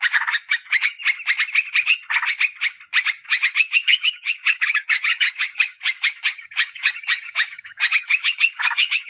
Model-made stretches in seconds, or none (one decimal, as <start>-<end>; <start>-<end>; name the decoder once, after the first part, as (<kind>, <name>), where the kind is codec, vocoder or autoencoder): 0.0-1.0 (codec, DAC); 3.1-9.1